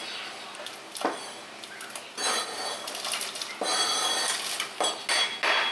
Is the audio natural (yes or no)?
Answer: yes